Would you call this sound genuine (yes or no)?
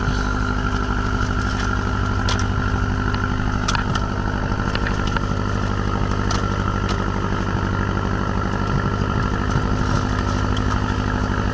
yes